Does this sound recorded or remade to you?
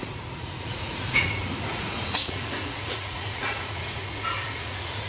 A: remade